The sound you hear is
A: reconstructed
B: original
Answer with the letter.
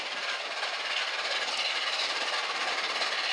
B